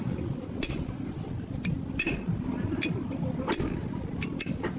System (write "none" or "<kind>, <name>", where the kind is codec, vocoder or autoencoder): none